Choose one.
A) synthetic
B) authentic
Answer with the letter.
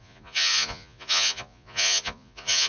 A